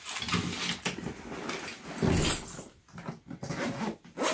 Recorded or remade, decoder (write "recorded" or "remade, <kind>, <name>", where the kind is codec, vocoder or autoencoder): recorded